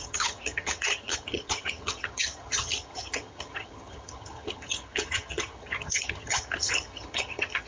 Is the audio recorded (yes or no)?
no